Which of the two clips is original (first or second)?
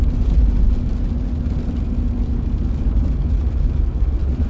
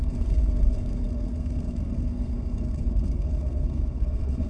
first